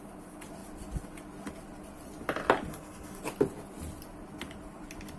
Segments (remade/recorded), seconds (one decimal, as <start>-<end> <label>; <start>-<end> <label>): 0.0-2.7 recorded; 2.7-3.2 remade; 3.2-5.2 recorded